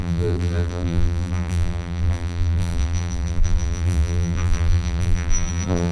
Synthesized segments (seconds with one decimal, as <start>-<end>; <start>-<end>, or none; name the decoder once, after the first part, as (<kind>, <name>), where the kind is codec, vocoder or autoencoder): 0.0-5.9 (vocoder, BigVGAN v2)